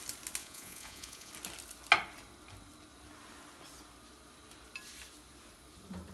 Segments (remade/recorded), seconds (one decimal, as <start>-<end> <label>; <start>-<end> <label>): 0.0-0.4 recorded; 0.4-1.3 remade; 1.3-6.1 recorded